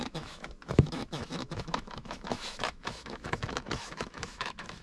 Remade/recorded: remade